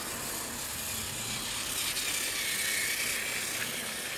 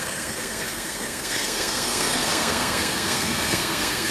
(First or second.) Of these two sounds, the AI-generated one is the second